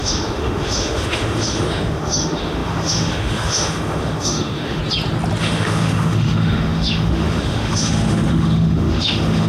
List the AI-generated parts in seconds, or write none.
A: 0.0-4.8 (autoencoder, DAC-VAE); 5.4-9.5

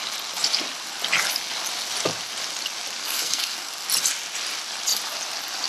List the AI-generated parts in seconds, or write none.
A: 3.0-3.7 (codec, SNAC)

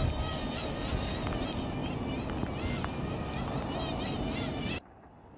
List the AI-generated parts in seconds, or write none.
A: none

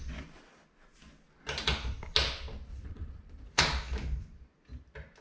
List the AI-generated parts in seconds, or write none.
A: 2.7-3.6 (vocoder, Vocos)

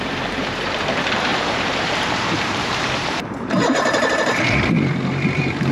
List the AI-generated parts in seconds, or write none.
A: 0.0-5.7 (vocoder, BigVGAN v2)